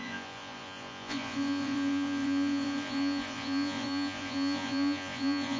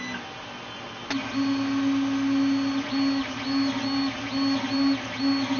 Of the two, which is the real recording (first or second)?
second